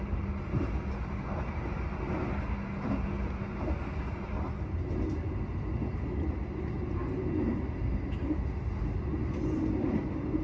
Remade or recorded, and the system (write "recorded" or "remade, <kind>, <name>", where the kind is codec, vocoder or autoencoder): recorded